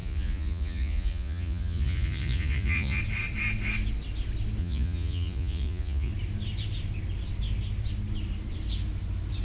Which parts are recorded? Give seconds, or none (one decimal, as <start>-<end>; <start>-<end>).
3.0-4.6; 6.1-9.4